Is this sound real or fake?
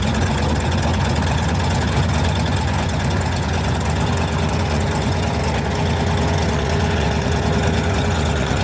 fake